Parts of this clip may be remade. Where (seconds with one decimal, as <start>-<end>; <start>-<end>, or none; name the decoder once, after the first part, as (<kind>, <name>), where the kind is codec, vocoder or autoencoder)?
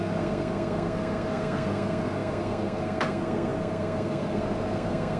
0.0-5.2 (codec, SNAC)